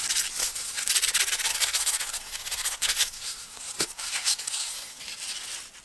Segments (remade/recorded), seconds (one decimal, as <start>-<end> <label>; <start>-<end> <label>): 0.0-0.4 recorded; 0.4-0.9 remade; 0.9-1.5 recorded; 1.5-5.0 remade; 5.0-5.8 recorded